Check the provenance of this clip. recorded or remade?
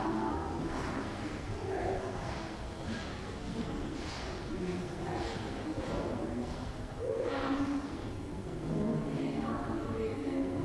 remade